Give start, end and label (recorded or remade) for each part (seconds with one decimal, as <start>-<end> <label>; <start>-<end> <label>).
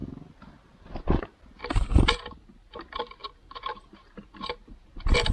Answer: 0.0-1.7 recorded; 1.7-5.3 remade